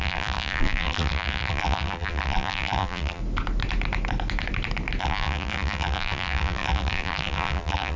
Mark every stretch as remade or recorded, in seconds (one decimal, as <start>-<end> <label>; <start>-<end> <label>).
0.0-3.2 remade; 3.2-5.0 recorded; 5.0-8.0 remade